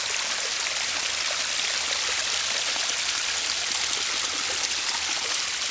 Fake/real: real